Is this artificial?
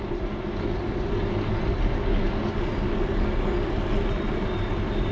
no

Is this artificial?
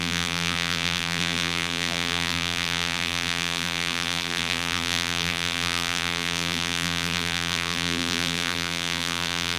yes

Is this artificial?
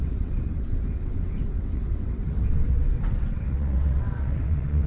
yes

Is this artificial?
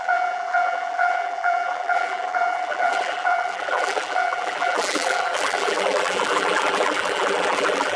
yes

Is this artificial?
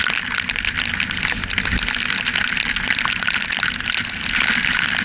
no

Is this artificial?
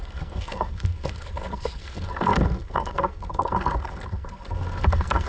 yes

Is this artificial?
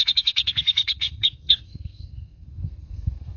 yes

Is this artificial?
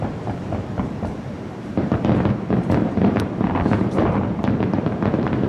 yes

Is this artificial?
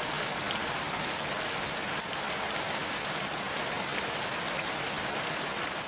no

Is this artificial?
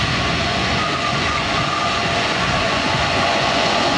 yes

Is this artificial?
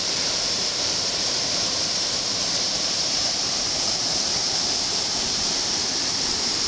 yes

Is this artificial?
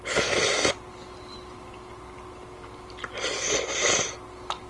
no